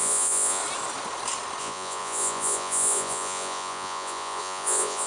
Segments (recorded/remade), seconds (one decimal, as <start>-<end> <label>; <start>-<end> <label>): 0.0-0.6 remade; 0.6-1.6 recorded; 1.6-5.1 remade